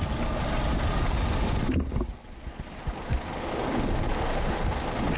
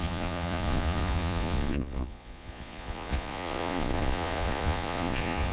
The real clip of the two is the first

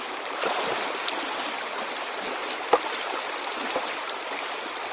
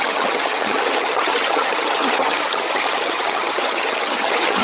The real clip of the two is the first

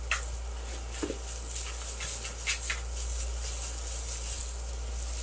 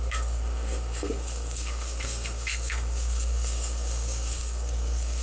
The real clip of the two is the first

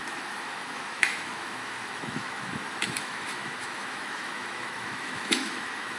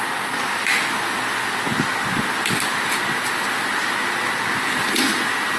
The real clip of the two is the second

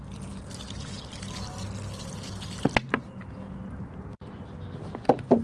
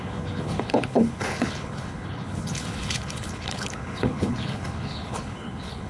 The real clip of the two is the first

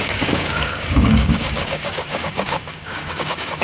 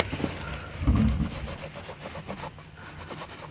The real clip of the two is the second